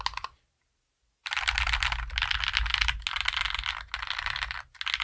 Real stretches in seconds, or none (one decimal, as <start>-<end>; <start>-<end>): 0.0-5.0